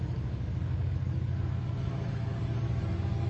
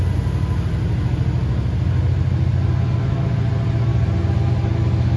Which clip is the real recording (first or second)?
second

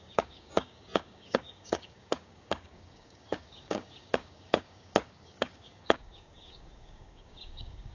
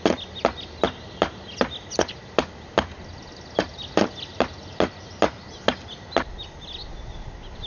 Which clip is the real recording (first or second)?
second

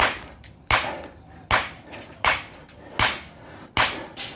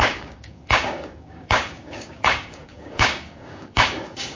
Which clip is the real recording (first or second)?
first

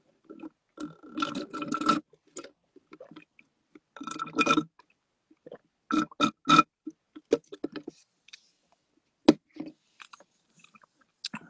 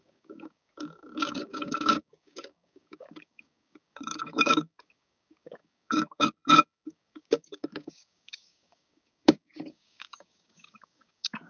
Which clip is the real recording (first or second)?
first